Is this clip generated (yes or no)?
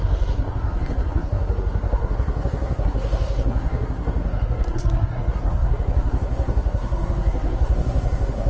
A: yes